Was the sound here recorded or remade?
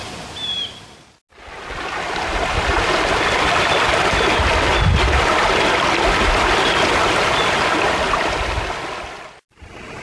recorded